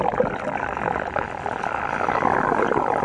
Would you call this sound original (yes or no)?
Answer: yes